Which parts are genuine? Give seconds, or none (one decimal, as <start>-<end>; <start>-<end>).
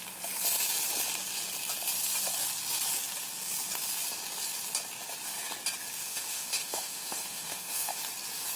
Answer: 0.0-6.0; 8.0-8.6